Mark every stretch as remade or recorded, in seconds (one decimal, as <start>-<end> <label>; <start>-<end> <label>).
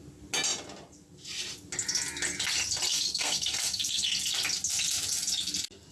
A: 0.0-2.9 recorded; 2.9-4.0 remade; 4.0-5.9 recorded